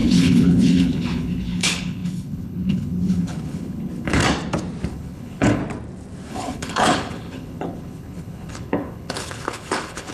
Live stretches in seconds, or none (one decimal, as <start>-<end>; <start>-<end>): 4.2-4.9; 5.6-6.3